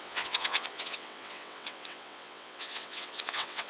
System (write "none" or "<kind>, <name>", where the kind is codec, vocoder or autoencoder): vocoder, WaveNeXt